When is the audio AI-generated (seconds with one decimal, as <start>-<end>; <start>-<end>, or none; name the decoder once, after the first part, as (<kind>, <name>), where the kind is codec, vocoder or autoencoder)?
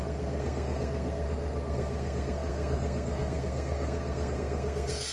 0.0-5.1 (codec, SNAC)